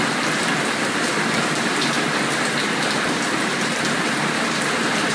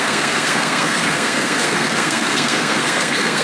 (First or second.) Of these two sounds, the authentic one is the first